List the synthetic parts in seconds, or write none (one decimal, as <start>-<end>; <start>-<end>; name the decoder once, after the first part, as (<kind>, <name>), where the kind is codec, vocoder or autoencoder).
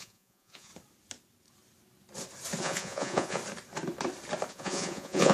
0.0-0.7 (vocoder, Vocos); 2.6-3.4; 4.5-5.3